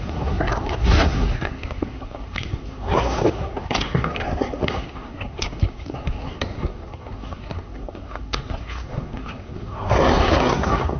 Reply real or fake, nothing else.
fake